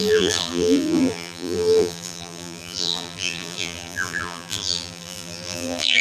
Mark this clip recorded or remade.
remade